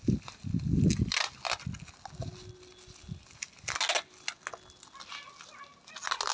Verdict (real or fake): real